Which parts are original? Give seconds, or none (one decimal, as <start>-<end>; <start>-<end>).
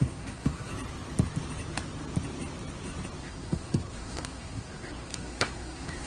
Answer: 0.7-3.2